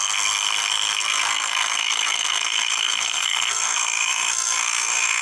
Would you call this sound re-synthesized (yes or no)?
yes